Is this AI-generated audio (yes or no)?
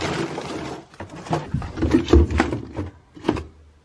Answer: no